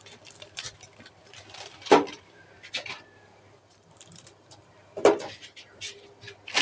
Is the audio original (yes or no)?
no